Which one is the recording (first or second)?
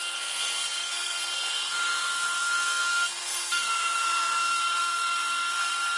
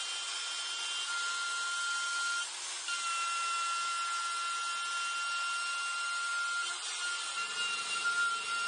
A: second